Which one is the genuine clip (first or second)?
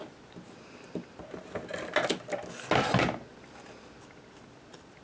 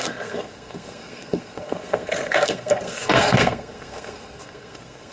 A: first